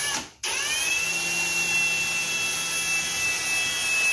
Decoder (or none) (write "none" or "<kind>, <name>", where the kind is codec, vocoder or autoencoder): none